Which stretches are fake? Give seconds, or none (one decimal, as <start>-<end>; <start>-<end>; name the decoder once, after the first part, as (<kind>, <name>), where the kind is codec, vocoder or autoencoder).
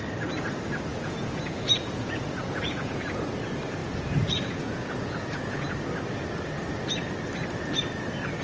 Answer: 0.9-3.3 (vocoder, Vocos); 3.8-5.7